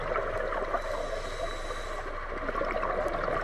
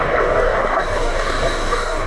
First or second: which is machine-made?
second